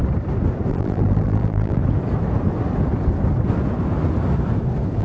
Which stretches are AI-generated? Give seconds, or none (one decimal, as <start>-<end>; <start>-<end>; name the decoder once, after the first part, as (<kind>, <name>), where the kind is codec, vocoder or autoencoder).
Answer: 0.7-1.8 (vocoder, BigVGAN v2)